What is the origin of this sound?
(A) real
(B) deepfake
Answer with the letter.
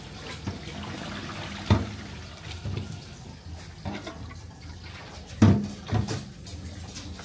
A